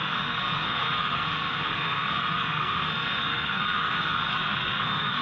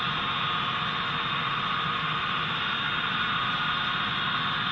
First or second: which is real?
second